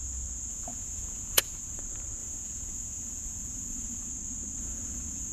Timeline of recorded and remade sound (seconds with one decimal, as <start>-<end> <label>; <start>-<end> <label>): 0.0-0.5 recorded; 0.5-1.8 remade; 1.8-2.2 recorded; 2.2-4.1 remade; 4.1-4.6 recorded; 4.6-5.3 remade